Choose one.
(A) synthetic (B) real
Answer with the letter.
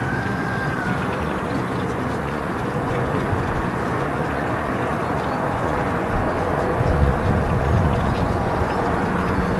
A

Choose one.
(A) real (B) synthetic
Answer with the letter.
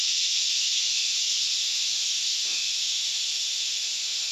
B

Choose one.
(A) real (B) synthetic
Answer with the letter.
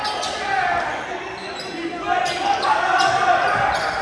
A